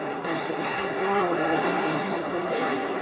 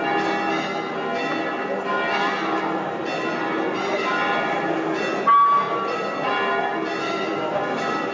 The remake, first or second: first